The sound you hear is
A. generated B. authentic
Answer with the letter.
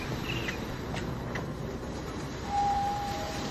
A